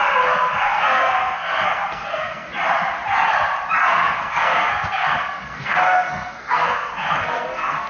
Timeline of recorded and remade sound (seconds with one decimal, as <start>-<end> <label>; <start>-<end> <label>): 0.0-0.7 recorded; 0.7-2.5 remade; 2.5-3.8 recorded; 3.8-7.9 remade